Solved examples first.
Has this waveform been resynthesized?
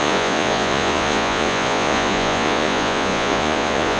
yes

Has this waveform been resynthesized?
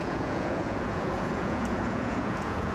yes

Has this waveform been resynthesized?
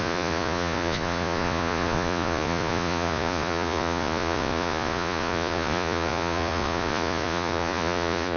yes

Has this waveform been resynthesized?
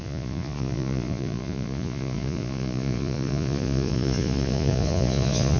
yes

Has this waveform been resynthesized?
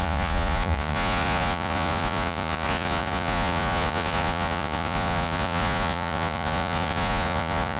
yes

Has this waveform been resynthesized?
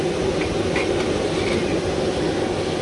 no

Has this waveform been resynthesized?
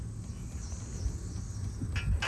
no